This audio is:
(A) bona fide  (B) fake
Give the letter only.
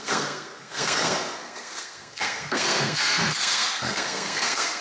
B